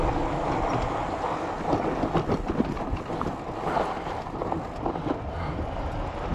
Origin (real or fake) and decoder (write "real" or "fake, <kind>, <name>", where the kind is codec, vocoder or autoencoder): real